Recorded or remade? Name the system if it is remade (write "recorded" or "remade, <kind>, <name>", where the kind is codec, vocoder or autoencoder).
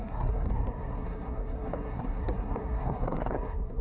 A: remade, codec, SNAC